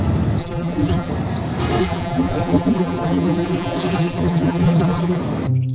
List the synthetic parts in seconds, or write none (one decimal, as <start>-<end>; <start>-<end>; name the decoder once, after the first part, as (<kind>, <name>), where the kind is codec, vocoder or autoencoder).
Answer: 0.4-1.1 (vocoder, BigVGAN v2); 1.8-5.2